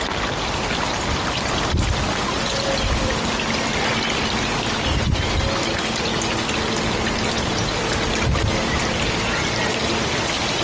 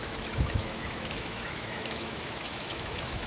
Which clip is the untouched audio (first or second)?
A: first